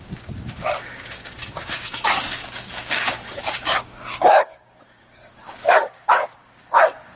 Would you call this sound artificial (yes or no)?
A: yes